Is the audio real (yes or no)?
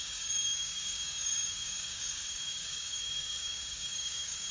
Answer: no